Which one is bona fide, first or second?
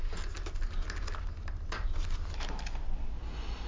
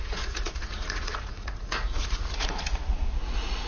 first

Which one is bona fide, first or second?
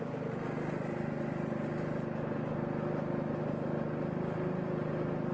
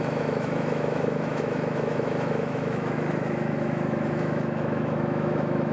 first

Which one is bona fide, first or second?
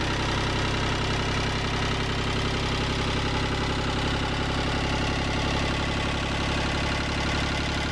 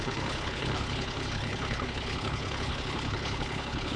first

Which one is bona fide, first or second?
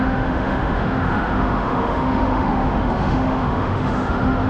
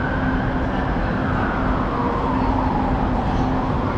second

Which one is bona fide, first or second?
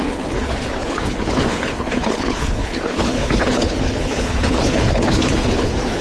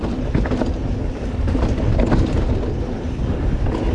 second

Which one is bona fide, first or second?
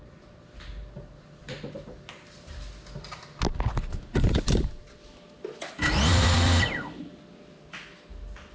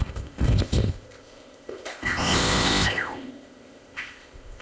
first